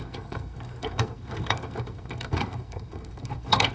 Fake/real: fake